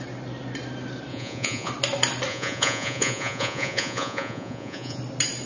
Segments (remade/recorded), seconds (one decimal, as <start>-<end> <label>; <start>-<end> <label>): 0.0-1.1 recorded; 1.1-1.7 remade; 1.7-2.3 recorded; 2.3-5.0 remade; 5.0-5.5 recorded